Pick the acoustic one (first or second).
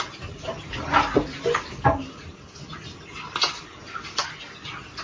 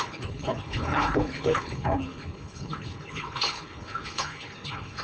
first